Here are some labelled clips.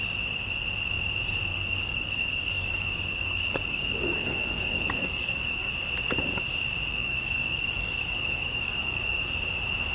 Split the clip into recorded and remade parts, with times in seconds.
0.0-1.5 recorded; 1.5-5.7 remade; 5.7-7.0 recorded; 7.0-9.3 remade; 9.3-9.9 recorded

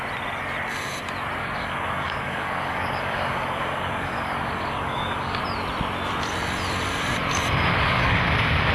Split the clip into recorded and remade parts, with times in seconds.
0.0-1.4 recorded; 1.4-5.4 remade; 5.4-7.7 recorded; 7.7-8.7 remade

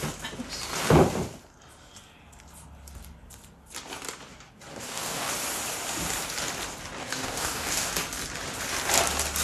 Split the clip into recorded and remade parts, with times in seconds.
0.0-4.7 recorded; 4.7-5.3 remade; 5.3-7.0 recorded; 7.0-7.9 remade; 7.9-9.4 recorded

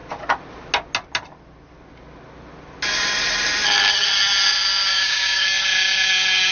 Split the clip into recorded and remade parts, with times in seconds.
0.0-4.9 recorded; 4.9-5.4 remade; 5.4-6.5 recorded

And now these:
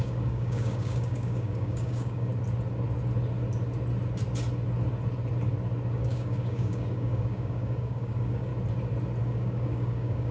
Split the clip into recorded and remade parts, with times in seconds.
0.0-2.3 remade; 2.3-5.9 recorded; 5.9-8.5 remade; 8.5-9.2 recorded; 9.2-10.3 remade

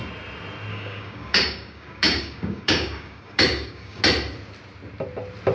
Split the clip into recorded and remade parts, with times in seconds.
0.0-0.7 recorded; 0.7-4.0 remade; 4.0-5.5 recorded

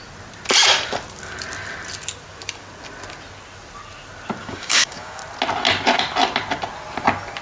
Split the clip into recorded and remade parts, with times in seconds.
0.0-4.4 recorded; 4.4-5.2 remade; 5.2-7.4 recorded